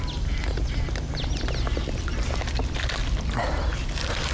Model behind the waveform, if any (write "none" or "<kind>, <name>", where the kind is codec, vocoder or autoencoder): none